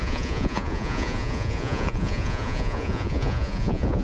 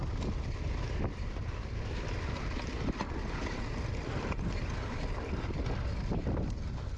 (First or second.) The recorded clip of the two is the second